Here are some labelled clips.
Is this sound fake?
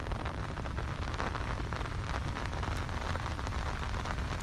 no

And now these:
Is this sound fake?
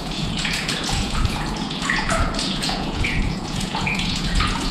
yes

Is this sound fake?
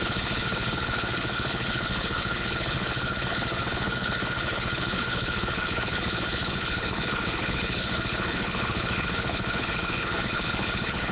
yes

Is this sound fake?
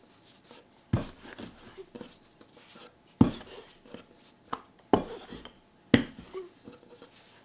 no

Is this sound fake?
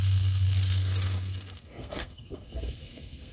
yes